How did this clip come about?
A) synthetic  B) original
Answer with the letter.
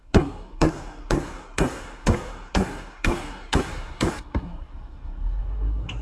A